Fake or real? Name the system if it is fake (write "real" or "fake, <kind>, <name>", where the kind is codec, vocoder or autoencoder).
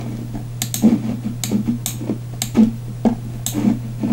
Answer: real